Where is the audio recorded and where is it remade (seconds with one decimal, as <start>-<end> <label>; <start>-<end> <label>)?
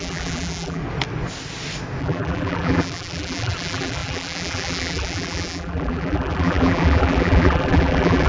0.0-0.8 remade; 0.8-2.0 recorded; 2.0-8.3 remade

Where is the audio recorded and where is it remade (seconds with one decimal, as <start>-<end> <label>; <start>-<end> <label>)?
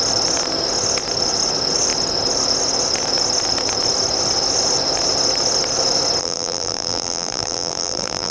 0.0-6.2 recorded; 6.2-8.3 remade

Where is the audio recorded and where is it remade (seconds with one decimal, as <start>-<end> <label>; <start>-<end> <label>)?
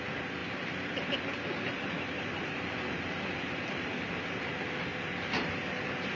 0.0-0.4 recorded; 0.4-4.1 remade; 4.1-6.1 recorded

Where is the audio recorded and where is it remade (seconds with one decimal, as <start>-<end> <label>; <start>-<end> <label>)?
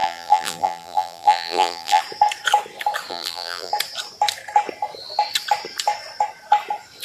0.0-2.0 remade; 2.0-3.1 recorded; 3.1-3.7 remade; 3.7-7.0 recorded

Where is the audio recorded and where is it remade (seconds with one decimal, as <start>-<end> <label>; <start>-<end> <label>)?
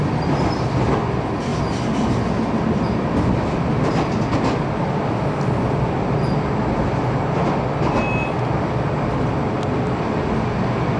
0.0-11.0 recorded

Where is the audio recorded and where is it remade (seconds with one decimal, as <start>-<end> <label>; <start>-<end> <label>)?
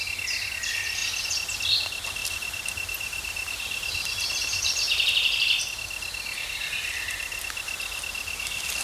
0.0-2.2 recorded; 2.2-5.6 remade; 5.6-8.8 recorded